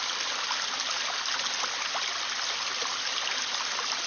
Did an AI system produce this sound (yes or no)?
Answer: no